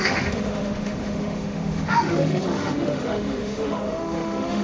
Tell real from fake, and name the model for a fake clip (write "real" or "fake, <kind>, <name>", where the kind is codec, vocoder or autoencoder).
fake, autoencoder, DAC-VAE